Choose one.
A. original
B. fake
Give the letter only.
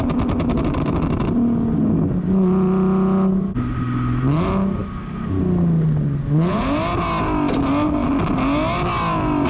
A